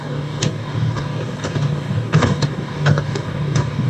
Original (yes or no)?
no